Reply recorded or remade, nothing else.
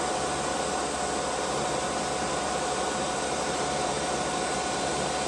recorded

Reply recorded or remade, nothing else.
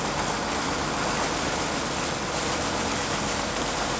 recorded